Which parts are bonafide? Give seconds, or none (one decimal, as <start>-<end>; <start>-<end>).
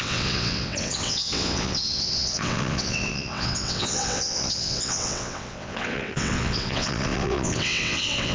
none